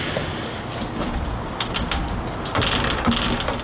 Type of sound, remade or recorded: recorded